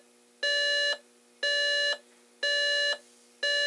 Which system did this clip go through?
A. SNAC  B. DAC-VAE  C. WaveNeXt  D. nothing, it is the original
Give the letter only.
D